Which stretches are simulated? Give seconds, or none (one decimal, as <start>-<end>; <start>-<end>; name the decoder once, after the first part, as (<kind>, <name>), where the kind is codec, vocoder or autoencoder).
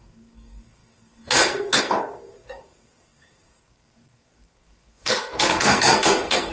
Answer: 0.0-6.5 (codec, SNAC)